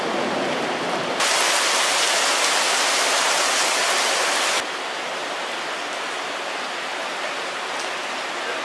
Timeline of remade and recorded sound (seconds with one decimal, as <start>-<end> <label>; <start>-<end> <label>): 0.0-8.6 recorded